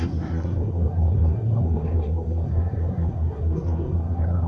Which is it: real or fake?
fake